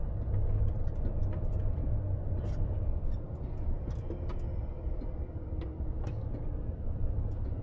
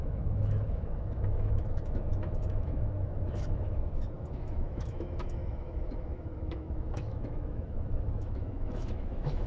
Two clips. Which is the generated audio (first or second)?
second